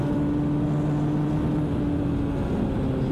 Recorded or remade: recorded